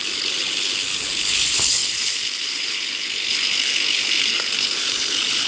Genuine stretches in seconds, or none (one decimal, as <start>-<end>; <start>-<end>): none